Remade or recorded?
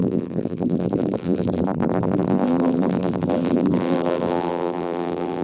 remade